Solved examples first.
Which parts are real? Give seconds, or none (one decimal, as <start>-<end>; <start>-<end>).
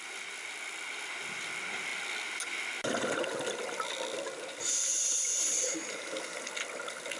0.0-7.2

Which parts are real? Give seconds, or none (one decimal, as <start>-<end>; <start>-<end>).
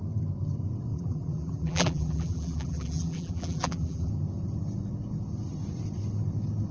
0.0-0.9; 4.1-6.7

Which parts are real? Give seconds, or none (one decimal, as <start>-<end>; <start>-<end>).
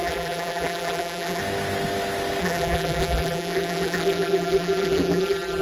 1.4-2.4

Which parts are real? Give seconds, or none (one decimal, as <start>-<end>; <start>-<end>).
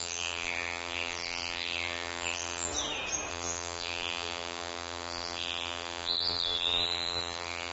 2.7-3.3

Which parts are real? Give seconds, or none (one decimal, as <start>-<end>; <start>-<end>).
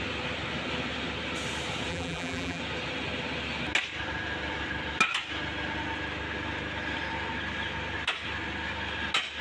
0.0-1.9; 2.6-9.4